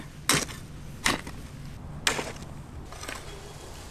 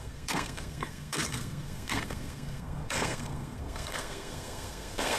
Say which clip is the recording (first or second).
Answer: first